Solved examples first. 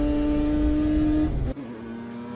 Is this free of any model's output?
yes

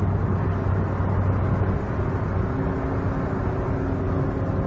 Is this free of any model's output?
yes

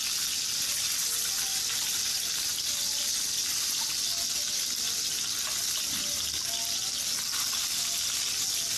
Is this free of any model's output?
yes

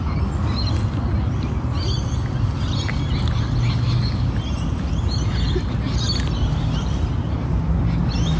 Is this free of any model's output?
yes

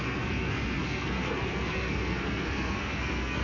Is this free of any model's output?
no